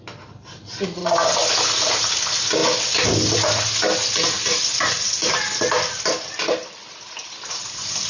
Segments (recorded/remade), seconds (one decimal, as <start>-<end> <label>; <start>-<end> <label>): 0.0-1.0 remade; 1.0-1.9 recorded; 1.9-2.6 remade; 2.6-7.5 recorded; 7.5-8.1 remade